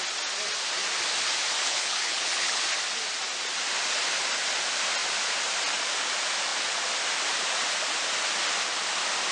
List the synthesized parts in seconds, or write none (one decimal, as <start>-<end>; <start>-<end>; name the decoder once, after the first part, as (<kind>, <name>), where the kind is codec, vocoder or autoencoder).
1.6-2.6 (codec, HILCodec)